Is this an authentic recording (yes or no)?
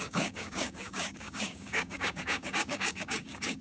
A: no